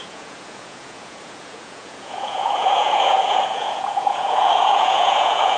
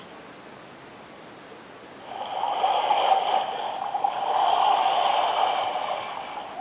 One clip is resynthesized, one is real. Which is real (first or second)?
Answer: second